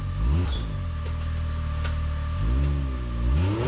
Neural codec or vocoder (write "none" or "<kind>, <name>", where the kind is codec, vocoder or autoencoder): none